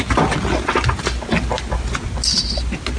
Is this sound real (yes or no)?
yes